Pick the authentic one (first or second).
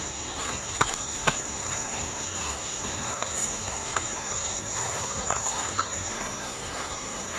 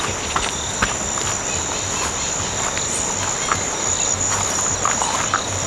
second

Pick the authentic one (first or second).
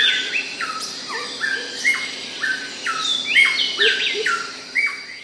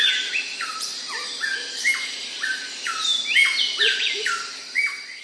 first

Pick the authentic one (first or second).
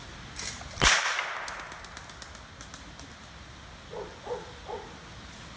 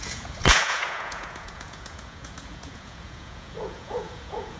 first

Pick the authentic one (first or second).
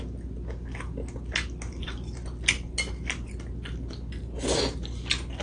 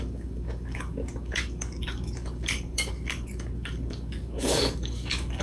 first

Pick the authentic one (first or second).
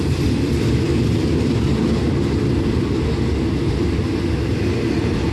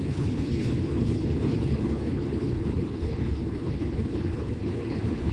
first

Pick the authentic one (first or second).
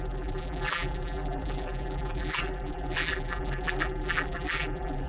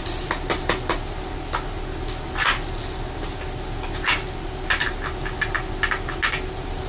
second